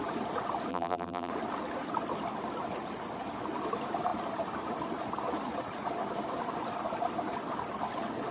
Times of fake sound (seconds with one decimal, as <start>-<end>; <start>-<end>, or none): 0.7-1.3